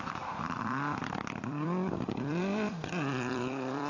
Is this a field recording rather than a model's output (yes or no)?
no